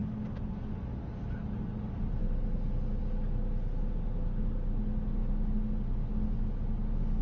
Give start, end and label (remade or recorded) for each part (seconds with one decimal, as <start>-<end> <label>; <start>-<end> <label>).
0.0-7.2 recorded